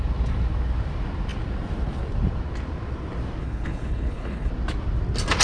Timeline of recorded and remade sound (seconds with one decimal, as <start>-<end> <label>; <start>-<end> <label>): 0.0-3.4 recorded; 3.4-4.5 remade; 4.5-5.4 recorded